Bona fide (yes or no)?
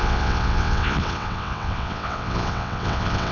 no